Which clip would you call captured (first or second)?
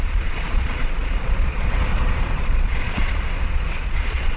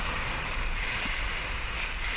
second